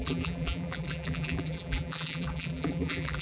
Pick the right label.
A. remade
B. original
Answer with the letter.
A